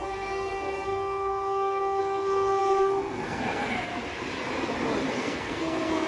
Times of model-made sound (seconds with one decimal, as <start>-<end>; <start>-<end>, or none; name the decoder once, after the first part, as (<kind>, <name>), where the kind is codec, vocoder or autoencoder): 0.0-3.9 (codec, SNAC); 5.1-6.1